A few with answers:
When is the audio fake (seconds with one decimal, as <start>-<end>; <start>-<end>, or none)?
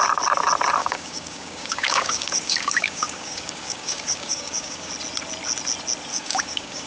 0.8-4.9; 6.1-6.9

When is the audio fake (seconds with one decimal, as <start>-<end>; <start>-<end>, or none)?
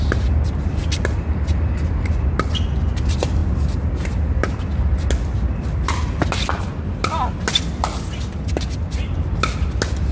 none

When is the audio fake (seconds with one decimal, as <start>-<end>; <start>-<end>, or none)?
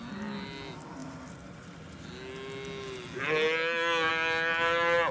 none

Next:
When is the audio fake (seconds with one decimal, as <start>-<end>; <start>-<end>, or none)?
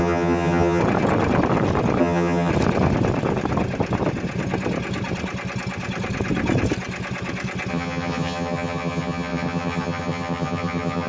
0.0-0.8; 2.0-2.5; 7.7-11.1